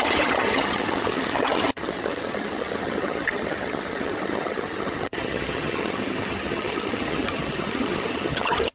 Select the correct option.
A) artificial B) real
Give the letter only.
A